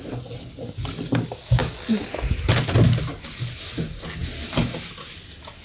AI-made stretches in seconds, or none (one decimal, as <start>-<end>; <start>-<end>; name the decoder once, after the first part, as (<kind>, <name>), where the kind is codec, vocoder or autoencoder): none